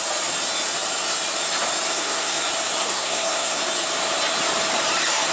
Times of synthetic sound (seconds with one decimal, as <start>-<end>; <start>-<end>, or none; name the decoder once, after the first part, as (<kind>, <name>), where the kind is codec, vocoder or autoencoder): 1.9-2.4 (codec, SNAC); 2.8-3.6